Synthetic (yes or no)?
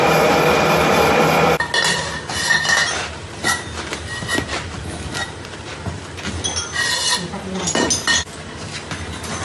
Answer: no